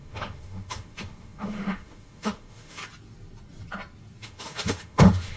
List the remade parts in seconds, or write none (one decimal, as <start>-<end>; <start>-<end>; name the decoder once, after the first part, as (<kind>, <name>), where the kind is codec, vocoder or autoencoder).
0.0-2.8 (autoencoder, DAC-VAE); 4.2-5.4